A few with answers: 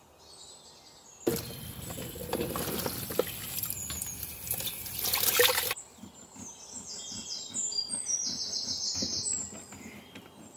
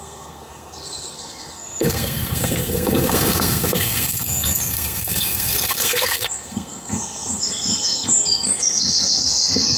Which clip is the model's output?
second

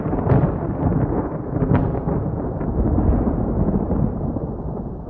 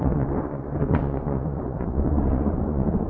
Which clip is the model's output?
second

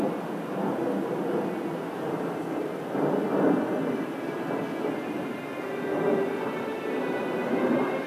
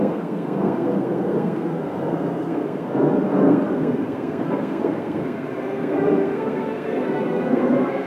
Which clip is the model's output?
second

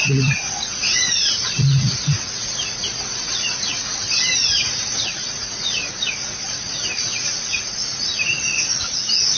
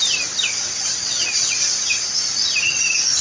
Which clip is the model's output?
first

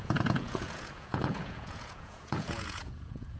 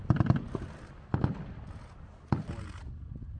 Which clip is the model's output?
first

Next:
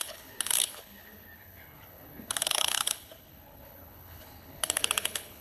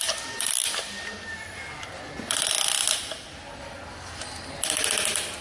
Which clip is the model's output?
first